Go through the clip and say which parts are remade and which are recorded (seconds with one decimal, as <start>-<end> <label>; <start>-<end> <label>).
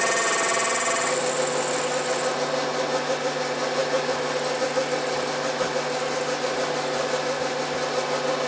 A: 0.0-8.5 recorded